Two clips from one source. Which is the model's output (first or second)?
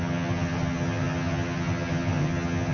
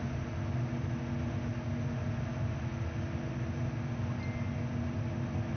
first